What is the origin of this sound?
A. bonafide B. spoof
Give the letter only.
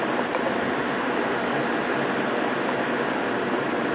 A